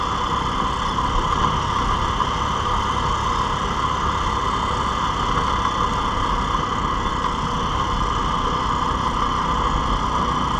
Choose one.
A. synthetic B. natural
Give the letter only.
B